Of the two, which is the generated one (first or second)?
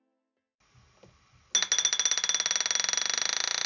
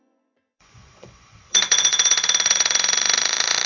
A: second